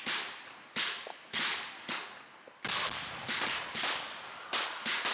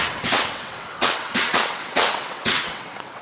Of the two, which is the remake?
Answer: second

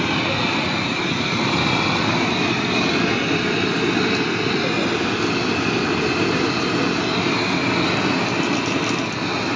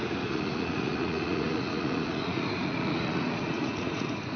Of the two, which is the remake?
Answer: second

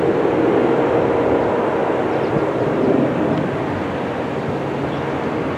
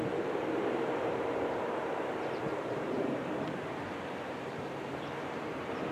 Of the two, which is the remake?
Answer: second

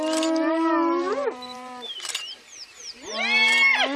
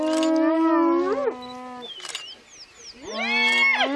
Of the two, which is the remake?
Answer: first